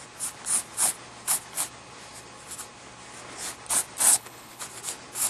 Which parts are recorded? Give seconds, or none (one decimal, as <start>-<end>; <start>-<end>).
0.0-4.1; 4.6-5.3